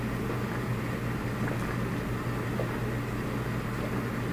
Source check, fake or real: real